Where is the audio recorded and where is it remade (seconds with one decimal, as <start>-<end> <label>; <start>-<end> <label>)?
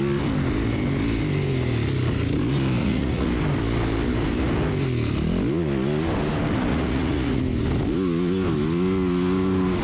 0.0-2.8 recorded; 2.8-3.3 remade; 3.3-6.7 recorded; 6.7-7.4 remade; 7.4-9.8 recorded